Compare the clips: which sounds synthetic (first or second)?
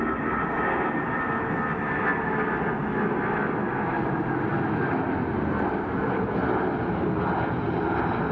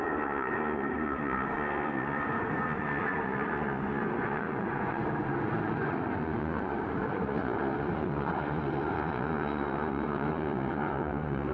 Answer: second